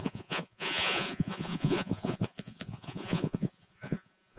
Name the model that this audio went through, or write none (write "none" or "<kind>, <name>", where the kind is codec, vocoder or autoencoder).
vocoder, Vocos